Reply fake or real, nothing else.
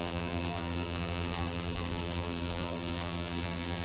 fake